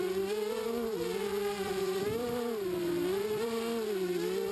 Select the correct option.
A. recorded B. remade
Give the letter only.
B